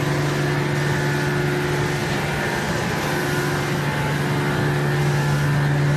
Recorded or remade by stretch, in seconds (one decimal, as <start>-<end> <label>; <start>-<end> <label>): 0.0-2.0 recorded; 2.0-3.0 remade; 3.0-6.0 recorded